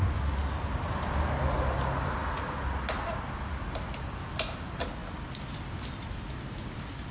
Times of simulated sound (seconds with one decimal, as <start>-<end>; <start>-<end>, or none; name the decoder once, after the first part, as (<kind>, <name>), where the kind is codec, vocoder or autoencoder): none